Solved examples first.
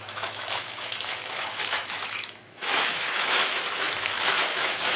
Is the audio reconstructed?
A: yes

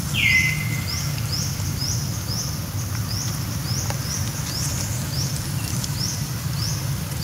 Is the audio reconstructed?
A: no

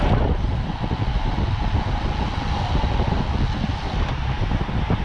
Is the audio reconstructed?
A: no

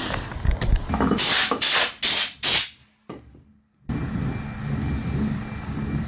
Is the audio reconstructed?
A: no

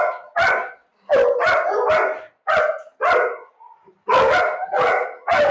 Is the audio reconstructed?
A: no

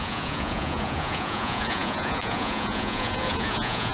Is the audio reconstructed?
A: yes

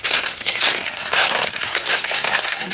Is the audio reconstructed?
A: yes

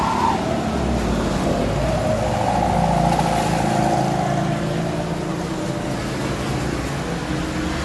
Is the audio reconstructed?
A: no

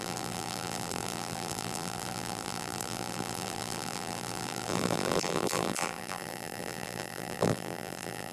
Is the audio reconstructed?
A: yes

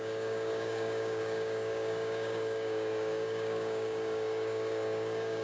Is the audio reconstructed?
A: yes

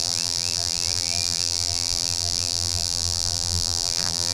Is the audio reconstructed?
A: yes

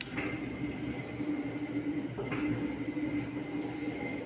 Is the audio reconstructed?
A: no